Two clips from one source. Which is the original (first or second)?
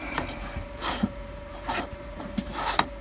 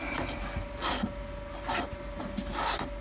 second